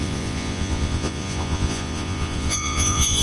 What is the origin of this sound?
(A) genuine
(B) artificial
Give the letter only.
B